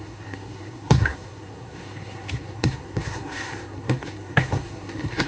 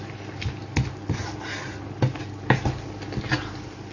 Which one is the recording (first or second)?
second